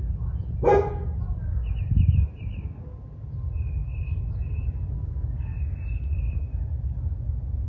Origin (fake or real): real